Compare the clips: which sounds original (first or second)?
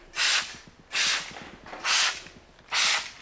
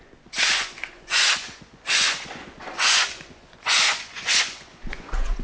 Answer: first